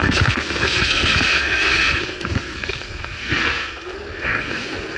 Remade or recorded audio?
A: remade